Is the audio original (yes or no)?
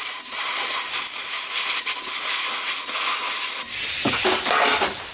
yes